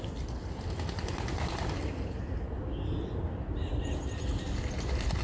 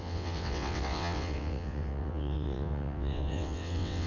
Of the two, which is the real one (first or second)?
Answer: first